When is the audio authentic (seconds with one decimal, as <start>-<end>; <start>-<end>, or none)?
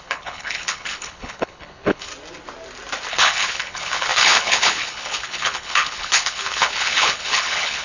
2.1-3.1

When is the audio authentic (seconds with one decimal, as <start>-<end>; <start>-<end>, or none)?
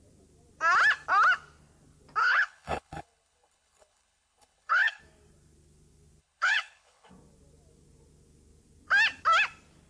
0.0-2.2; 5.0-6.2; 7.1-9.9